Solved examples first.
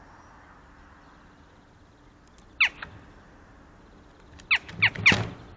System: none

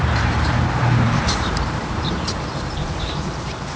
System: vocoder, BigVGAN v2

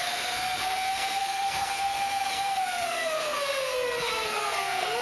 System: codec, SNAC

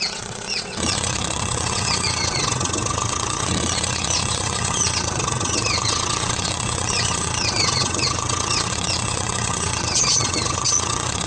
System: vocoder, WaveNeXt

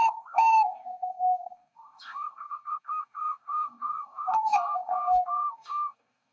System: codec, DAC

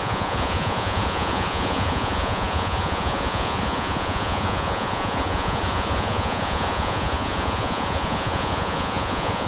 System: vocoder, Vocos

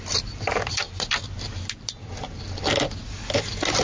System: none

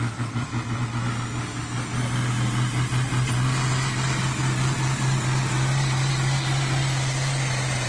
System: none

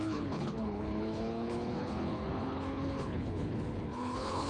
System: codec, HILCodec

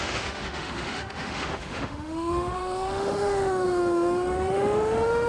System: autoencoder, DAC-VAE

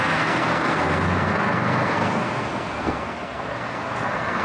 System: codec, SNAC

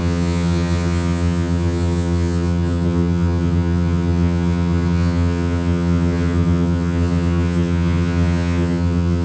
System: vocoder, HiFi-GAN